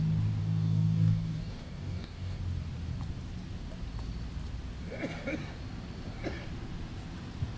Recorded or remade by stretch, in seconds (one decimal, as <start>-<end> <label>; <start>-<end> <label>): 0.0-0.4 recorded; 0.4-2.4 remade; 2.4-7.6 recorded